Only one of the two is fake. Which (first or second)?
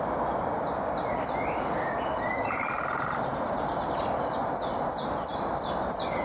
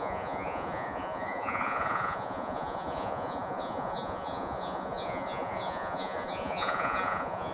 second